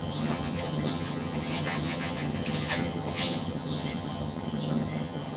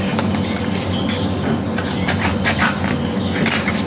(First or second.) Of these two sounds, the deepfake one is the first